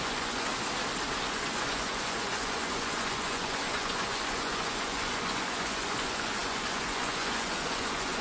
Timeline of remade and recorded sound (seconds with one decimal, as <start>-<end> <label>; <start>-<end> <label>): 0.0-0.5 remade; 0.5-1.3 recorded; 1.3-8.2 remade